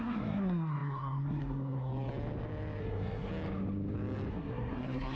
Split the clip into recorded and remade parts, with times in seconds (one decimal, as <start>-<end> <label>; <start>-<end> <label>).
0.0-1.9 remade; 1.9-2.8 recorded; 2.8-3.3 remade; 3.3-4.3 recorded; 4.3-5.2 remade